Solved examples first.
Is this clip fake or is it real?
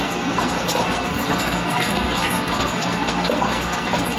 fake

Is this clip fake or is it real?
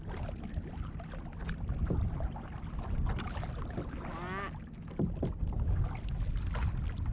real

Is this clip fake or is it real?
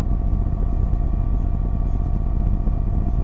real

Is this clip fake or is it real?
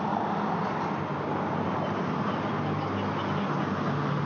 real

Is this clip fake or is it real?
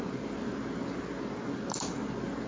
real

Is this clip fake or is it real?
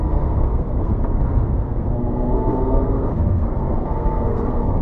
fake